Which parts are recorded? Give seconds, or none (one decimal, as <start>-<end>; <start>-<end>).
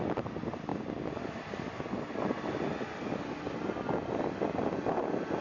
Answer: 0.0-5.4